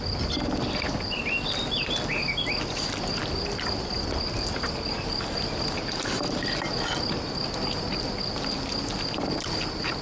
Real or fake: real